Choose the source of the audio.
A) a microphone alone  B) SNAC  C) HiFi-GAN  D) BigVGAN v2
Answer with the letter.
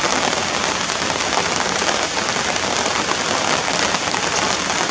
A